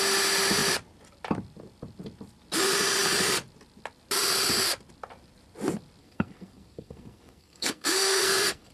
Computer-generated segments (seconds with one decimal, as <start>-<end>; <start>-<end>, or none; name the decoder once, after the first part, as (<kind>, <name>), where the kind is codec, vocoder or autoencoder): 6.0-8.7 (codec, SNAC)